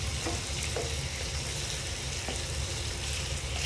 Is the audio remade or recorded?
recorded